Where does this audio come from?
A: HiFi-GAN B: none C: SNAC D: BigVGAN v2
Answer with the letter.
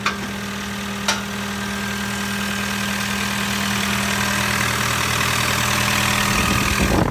B